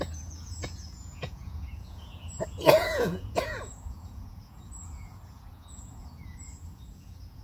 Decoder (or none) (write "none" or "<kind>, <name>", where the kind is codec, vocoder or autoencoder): vocoder, Vocos